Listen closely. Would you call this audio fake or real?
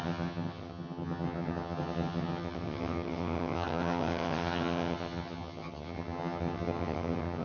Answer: fake